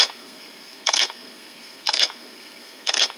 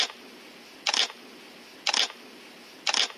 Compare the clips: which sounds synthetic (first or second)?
first